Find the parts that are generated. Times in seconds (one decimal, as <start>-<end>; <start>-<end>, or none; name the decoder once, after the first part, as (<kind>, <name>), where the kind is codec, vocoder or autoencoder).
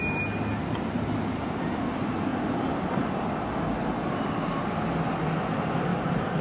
0.5-1.9 (vocoder, BigVGAN v2); 2.3-3.3; 5.9-6.4